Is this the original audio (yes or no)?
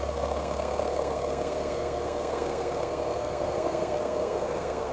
no